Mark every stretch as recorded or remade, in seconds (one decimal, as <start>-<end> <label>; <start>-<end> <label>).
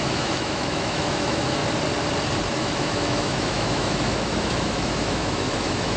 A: 0.0-1.6 remade; 1.6-2.5 recorded; 2.5-6.0 remade